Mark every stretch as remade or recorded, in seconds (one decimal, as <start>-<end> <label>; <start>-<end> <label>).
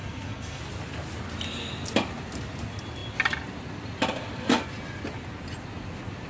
0.0-0.6 remade; 0.6-6.3 recorded